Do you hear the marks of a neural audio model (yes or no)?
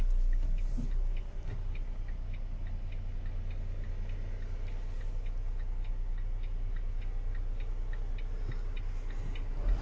no